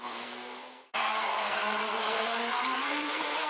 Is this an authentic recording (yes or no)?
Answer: no